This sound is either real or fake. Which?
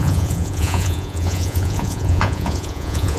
fake